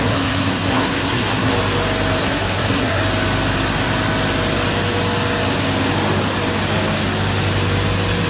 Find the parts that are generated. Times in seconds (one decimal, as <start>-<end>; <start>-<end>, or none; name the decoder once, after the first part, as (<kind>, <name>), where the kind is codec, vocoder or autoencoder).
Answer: 0.0-1.5 (codec, SNAC); 2.2-3.0